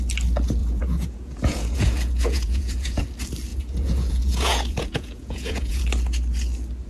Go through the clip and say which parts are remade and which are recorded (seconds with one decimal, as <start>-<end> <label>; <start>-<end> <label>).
0.0-0.6 recorded; 0.6-3.0 remade; 3.0-3.5 recorded; 3.5-5.8 remade; 5.8-6.9 recorded